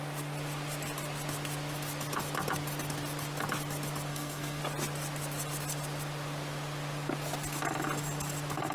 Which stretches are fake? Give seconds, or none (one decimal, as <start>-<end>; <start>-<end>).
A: 4.1-4.6